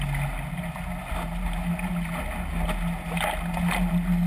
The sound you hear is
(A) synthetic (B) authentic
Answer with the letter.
B